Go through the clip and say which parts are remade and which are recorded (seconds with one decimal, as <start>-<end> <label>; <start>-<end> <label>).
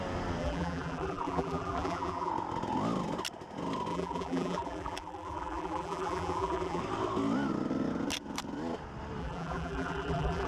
0.0-0.4 recorded; 0.4-2.3 remade; 2.3-3.9 recorded; 3.9-6.8 remade; 6.8-9.2 recorded; 9.2-10.5 remade